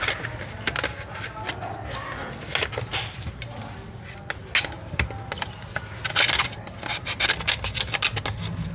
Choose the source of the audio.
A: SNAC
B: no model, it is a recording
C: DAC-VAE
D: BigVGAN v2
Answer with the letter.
B